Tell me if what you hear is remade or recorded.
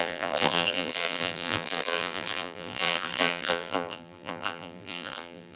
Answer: remade